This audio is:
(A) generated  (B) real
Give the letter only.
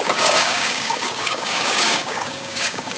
A